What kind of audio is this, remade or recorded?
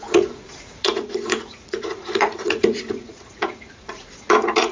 remade